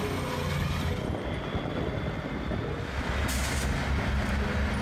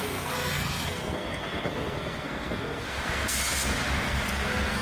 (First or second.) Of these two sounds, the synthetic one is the second